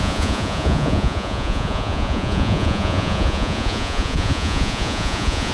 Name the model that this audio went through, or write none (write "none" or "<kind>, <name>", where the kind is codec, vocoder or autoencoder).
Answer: vocoder, Vocos